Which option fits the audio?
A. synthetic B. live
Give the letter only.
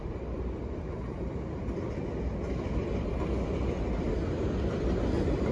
B